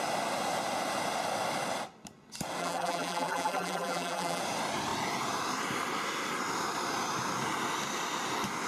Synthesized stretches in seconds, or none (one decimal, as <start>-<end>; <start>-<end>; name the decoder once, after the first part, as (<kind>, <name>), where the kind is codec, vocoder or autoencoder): 2.6-4.4 (vocoder, BigVGAN v2)